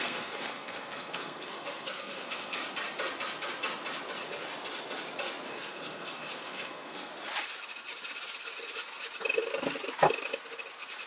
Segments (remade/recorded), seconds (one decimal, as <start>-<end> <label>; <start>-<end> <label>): 0.0-2.6 remade; 2.6-5.5 recorded; 5.5-7.1 remade; 7.1-11.1 recorded